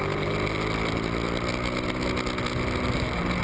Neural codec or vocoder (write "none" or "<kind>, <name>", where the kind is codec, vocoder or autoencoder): none